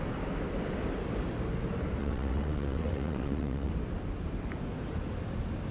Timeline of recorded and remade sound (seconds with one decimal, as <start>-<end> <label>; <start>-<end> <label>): 0.0-2.0 recorded; 2.0-3.7 remade; 3.7-5.7 recorded